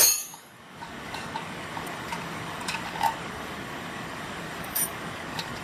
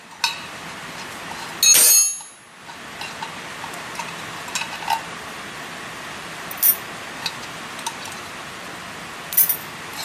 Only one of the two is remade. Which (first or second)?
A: first